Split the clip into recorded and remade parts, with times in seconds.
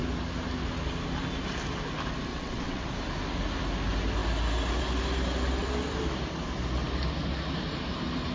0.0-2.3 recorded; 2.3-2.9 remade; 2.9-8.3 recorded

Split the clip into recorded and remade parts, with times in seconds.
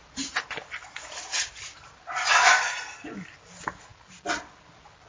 0.0-5.1 recorded